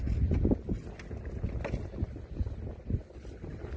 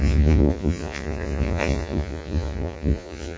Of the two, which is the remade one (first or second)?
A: second